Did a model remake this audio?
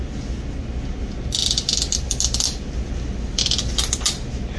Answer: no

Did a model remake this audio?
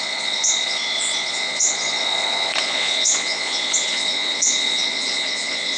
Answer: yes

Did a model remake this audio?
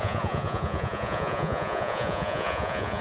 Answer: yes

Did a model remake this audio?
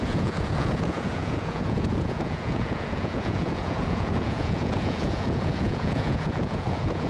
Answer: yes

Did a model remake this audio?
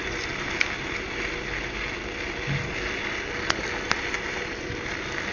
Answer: no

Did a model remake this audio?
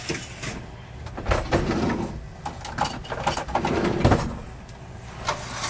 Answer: no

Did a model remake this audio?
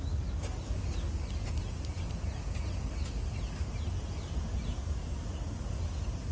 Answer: no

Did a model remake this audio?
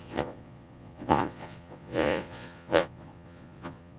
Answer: yes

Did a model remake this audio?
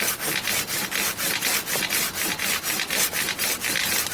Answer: no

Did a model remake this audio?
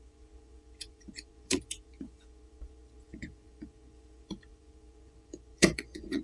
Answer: yes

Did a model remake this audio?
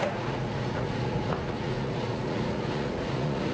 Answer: yes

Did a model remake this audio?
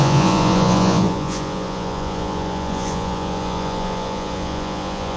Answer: yes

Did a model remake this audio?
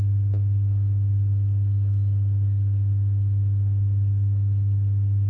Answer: no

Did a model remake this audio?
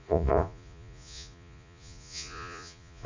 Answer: yes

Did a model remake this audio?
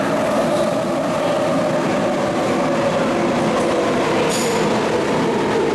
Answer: no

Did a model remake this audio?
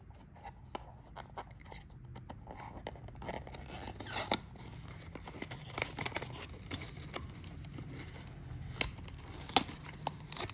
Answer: no